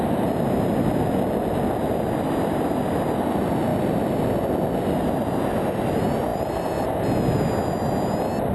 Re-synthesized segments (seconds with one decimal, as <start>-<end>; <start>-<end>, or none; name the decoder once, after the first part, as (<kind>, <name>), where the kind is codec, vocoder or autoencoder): 6.3-7.0 (vocoder, BigVGAN v2)